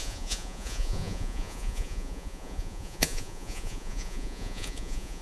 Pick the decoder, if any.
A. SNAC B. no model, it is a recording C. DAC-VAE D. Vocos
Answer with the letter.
D